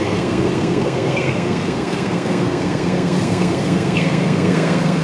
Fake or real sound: fake